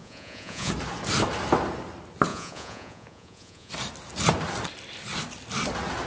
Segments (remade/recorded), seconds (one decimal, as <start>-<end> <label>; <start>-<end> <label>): 0.0-0.7 remade; 0.7-2.3 recorded; 2.3-3.7 remade; 3.7-6.1 recorded